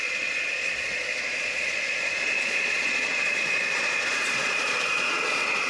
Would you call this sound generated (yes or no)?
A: yes